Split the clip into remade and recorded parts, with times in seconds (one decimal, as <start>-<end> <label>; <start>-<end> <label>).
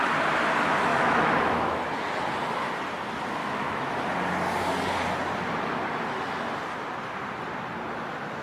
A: 0.0-0.9 recorded; 0.9-1.8 remade; 1.8-3.4 recorded; 3.4-3.9 remade; 3.9-8.4 recorded